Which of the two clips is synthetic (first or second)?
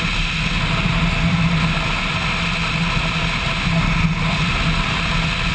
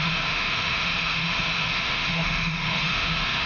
second